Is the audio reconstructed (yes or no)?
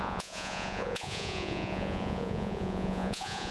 yes